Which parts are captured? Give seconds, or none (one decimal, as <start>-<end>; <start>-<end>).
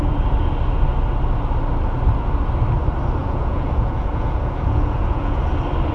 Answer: 0.0-3.2; 5.4-5.9